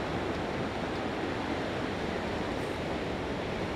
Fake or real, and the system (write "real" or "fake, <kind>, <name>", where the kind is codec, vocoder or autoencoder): real